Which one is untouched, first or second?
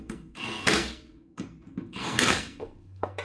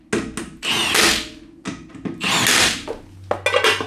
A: second